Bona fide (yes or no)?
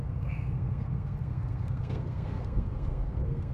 no